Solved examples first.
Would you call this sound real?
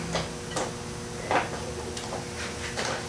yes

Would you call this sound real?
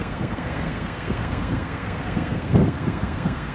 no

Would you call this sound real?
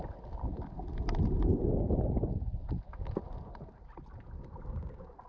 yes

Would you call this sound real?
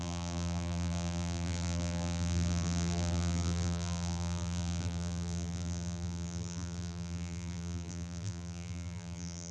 no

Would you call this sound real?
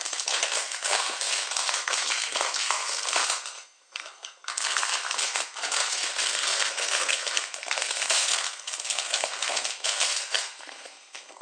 no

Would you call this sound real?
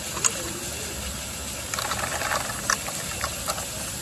yes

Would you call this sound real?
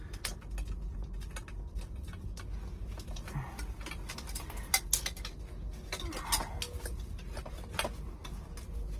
yes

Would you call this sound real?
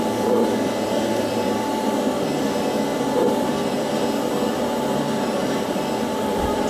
no